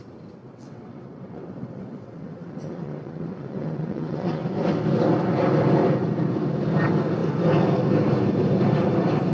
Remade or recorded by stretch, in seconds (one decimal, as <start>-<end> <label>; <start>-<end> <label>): 0.0-0.4 recorded; 0.4-4.4 remade; 4.4-9.3 recorded